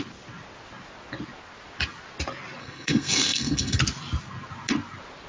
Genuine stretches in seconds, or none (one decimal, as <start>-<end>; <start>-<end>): 0.0-2.6; 3.8-5.3